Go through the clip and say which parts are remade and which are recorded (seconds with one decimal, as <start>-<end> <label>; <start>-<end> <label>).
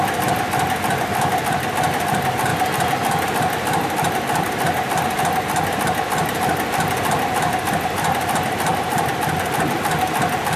0.0-2.5 recorded; 2.5-5.0 remade; 5.0-8.7 recorded; 8.7-10.0 remade; 10.0-10.6 recorded